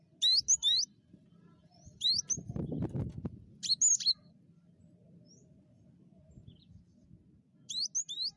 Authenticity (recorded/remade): recorded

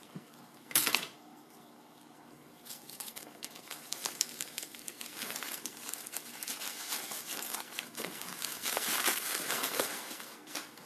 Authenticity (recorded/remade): remade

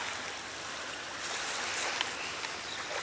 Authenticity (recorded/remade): recorded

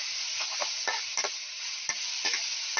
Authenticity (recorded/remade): recorded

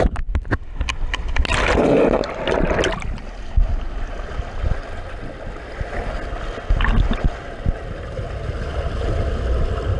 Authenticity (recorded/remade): recorded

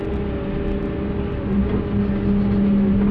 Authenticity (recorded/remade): recorded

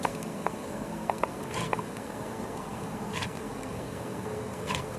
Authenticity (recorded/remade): remade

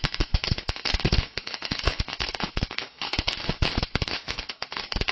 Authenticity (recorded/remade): remade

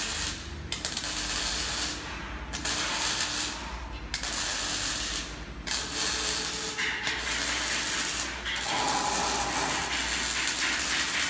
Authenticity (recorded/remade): recorded